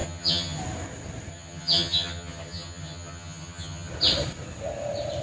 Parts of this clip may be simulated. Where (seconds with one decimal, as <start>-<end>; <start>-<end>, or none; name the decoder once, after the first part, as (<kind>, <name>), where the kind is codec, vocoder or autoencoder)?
0.0-0.6 (vocoder, HiFi-GAN); 1.3-3.9